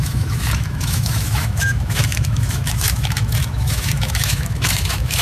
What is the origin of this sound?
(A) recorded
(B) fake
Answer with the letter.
B